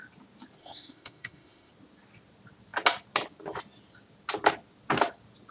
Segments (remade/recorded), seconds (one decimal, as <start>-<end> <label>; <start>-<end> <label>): 0.0-0.6 recorded; 0.6-1.7 remade; 1.7-5.5 recorded